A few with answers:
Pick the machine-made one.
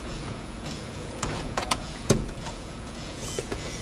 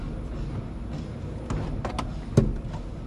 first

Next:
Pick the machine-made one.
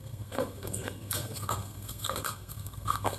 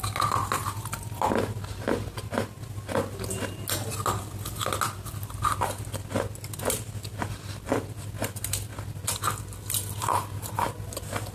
first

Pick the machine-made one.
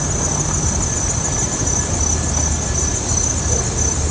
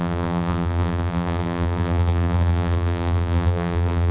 second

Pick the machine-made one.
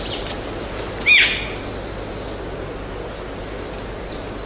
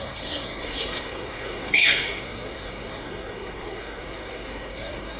second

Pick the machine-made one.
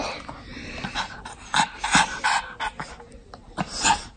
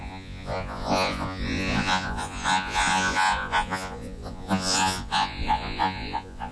second